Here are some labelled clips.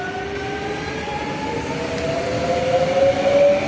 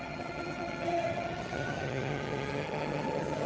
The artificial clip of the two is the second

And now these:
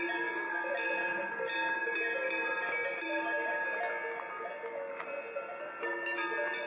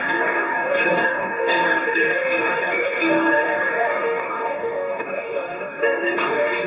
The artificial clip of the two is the second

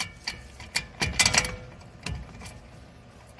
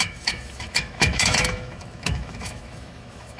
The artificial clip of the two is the second